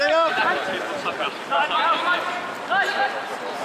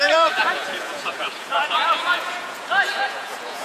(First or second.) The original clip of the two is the first